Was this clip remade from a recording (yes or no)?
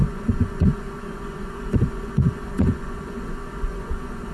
yes